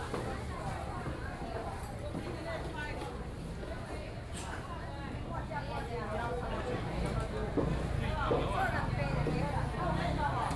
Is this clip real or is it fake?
real